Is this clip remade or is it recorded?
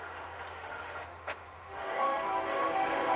remade